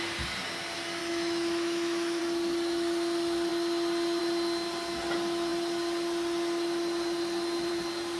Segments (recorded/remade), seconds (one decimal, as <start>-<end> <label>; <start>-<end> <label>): 0.0-1.0 recorded; 1.0-2.2 remade; 2.2-8.2 recorded